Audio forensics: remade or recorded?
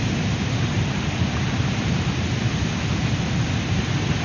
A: remade